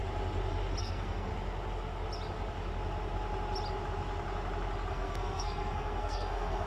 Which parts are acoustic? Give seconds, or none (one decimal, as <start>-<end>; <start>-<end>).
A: 0.0-0.8; 1.3-4.9